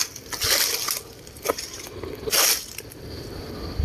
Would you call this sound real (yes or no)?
yes